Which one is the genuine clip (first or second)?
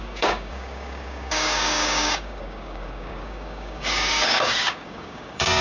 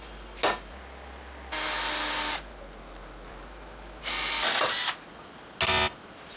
second